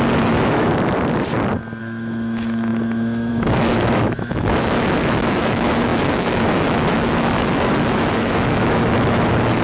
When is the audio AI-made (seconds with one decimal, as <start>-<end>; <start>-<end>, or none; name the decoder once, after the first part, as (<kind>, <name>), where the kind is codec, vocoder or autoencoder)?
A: 0.0-0.7 (autoencoder, DAC-VAE); 1.8-9.6